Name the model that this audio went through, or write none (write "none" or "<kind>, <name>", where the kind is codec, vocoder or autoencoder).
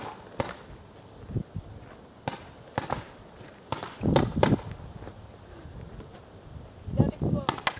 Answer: none